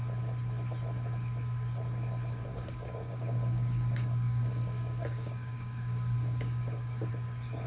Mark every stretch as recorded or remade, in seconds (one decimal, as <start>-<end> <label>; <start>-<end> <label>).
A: 0.0-2.5 recorded; 2.5-7.1 remade; 7.1-7.7 recorded